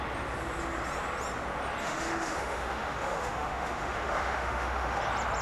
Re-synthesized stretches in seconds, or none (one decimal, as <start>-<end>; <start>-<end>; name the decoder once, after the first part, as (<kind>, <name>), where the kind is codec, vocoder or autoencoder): 1.8-5.0 (autoencoder, DAC-VAE)